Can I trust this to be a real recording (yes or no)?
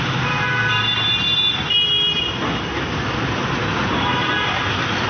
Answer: yes